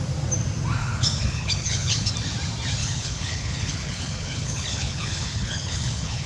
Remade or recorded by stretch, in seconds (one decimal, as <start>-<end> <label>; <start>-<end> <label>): 0.0-0.8 recorded; 0.8-2.1 remade; 2.1-2.8 recorded; 2.8-6.3 remade